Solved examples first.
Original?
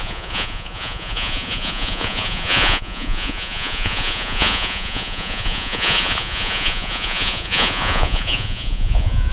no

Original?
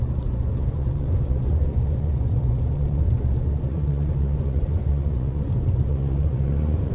no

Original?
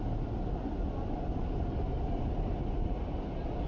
yes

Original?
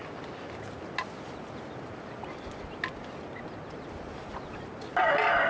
yes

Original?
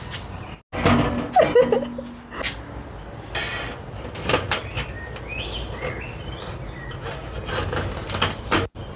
yes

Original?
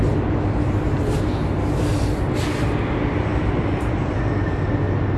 yes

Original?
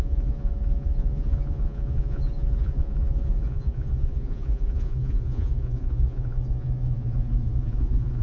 no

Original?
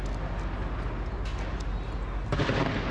yes